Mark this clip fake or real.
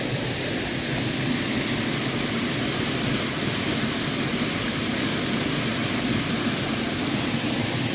real